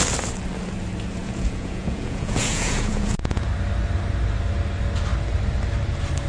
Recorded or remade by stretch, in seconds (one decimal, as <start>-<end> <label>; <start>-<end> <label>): 0.0-1.2 recorded; 1.2-3.5 remade; 3.5-6.3 recorded